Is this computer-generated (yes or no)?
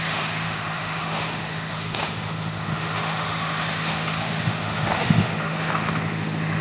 yes